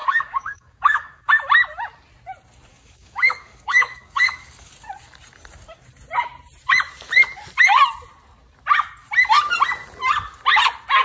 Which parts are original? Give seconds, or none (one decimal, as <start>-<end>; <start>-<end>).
1.3-2.7; 4.7-11.0